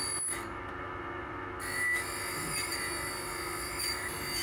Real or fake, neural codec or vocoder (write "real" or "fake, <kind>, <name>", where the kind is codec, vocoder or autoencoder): real